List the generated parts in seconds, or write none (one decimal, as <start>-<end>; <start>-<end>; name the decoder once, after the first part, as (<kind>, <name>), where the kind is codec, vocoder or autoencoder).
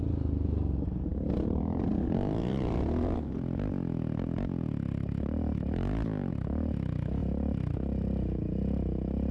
none